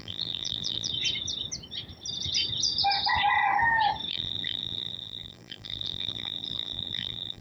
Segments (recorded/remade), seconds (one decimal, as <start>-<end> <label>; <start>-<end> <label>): 0.0-0.9 remade; 0.9-4.1 recorded; 4.1-7.4 remade